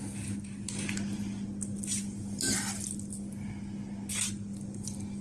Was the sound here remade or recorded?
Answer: recorded